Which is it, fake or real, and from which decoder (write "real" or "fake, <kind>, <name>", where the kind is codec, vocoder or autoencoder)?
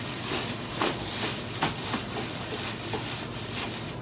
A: real